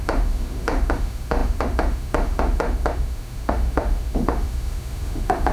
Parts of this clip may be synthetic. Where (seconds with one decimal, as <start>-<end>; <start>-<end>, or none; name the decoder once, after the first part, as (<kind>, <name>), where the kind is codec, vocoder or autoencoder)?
0.0-5.5 (autoencoder, DAC-VAE)